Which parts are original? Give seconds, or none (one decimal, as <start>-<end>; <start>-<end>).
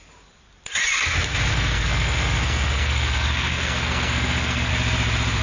0.0-1.5; 4.7-5.4